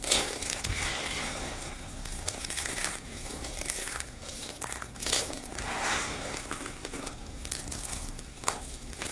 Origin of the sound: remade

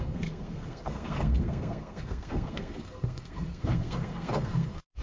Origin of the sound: remade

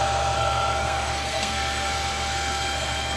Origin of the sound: remade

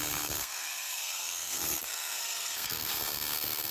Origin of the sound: remade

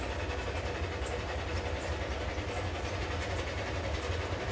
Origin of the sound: recorded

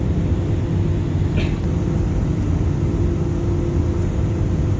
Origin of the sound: recorded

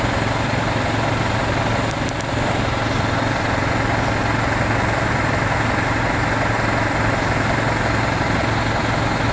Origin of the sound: recorded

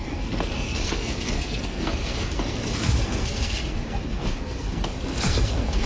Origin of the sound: remade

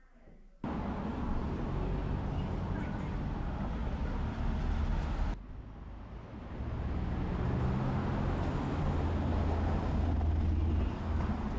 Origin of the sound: recorded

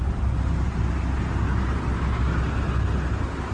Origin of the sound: recorded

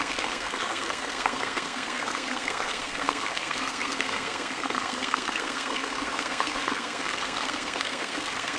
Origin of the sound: remade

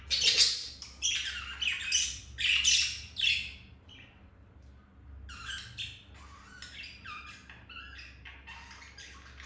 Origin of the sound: recorded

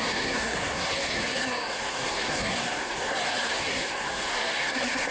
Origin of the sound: remade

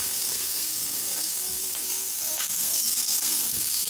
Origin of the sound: remade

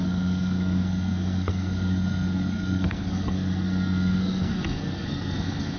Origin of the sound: remade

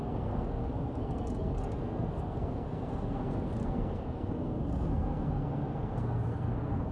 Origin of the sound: remade